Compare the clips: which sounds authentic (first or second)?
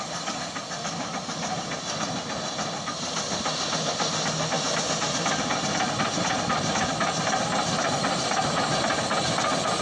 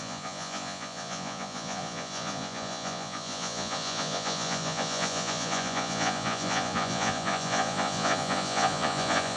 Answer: first